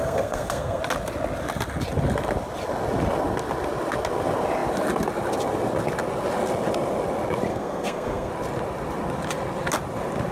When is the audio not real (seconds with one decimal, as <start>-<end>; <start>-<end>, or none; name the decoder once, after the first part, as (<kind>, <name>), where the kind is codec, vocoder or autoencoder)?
0.0-0.8 (codec, SNAC); 7.5-8.3